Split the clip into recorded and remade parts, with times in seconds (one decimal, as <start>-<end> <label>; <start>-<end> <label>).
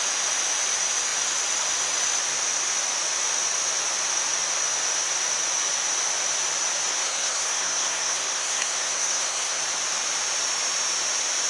0.0-6.9 recorded; 6.9-9.6 remade; 9.6-11.5 recorded